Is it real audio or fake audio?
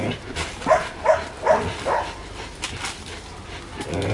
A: real